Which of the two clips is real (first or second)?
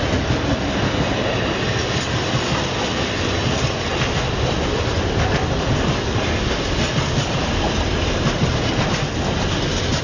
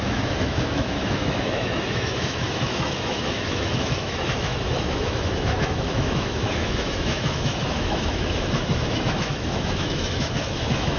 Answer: first